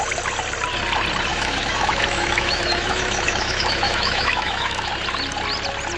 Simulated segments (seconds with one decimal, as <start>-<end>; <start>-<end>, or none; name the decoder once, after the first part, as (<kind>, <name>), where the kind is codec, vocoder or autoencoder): 1.3-4.9 (autoencoder, DAC-VAE)